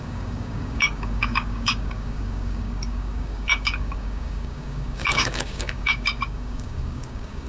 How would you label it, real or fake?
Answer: fake